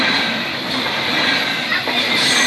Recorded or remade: recorded